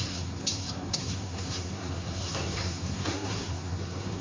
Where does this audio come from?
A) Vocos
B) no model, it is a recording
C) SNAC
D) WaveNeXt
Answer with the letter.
C